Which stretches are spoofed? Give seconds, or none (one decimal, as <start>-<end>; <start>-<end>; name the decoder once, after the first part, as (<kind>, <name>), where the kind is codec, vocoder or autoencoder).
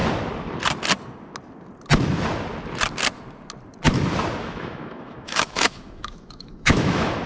4.4-7.3 (autoencoder, DAC-VAE)